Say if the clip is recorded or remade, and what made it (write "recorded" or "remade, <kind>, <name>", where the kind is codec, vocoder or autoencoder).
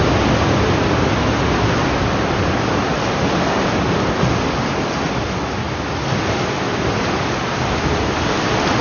recorded